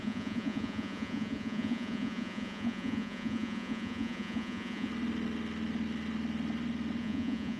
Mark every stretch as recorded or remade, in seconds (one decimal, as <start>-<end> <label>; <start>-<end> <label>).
0.0-4.9 remade; 4.9-7.0 recorded; 7.0-7.6 remade